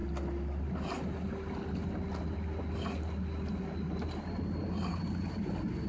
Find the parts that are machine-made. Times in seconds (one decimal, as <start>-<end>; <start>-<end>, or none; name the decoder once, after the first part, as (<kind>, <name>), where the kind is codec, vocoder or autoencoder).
none